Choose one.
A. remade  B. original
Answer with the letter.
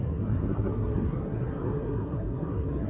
A